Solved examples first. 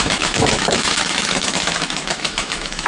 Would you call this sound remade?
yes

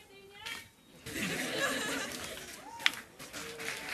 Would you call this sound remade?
no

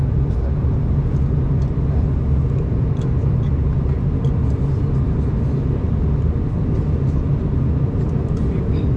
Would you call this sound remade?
no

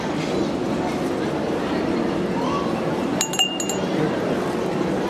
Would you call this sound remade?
no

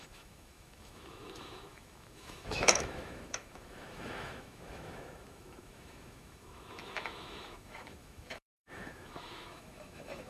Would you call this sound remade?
yes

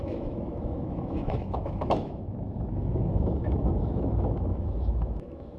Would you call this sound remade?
yes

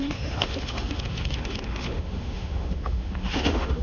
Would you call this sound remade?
yes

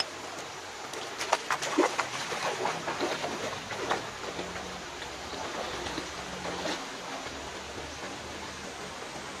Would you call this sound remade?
no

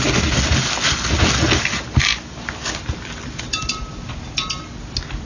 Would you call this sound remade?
no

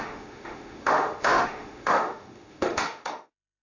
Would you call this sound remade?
yes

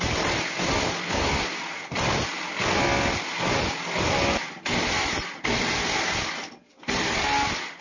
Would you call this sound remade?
no